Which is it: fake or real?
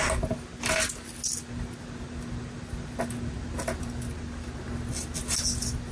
real